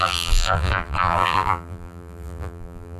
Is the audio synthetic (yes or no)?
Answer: yes